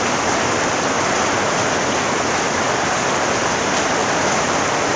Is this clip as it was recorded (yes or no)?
yes